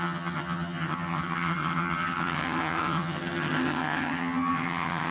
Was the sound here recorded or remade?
remade